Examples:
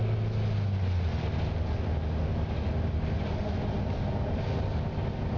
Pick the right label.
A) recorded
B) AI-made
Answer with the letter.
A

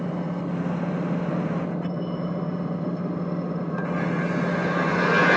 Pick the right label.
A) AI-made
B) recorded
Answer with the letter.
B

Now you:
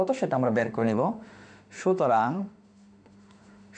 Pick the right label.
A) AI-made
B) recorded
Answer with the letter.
A